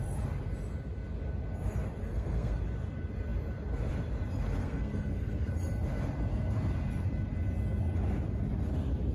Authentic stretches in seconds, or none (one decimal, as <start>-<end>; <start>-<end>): 0.0-2.0; 2.6-4.6; 5.5-9.1